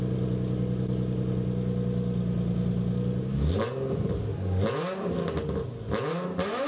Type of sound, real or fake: real